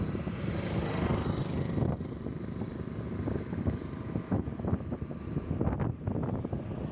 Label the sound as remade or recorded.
recorded